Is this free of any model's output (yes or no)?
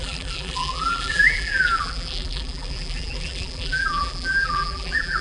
no